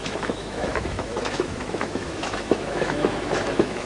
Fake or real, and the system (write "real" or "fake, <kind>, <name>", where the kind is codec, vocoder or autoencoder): fake, autoencoder, DAC-VAE